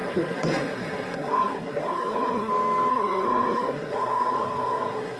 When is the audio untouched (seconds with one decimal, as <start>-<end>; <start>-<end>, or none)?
2.5-2.9